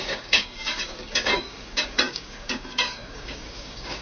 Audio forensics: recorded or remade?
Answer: remade